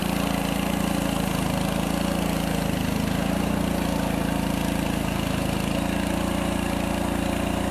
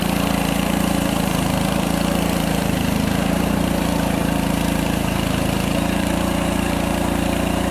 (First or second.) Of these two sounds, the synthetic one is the second